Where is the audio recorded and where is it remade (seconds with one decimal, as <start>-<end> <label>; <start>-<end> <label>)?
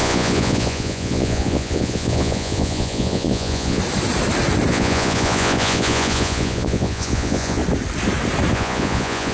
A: 0.0-3.8 remade; 3.8-4.7 recorded; 4.7-7.6 remade; 7.6-8.5 recorded; 8.5-9.3 remade